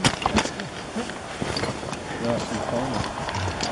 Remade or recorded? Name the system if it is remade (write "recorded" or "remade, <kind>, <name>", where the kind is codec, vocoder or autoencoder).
recorded